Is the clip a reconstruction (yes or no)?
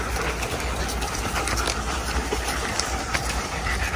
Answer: no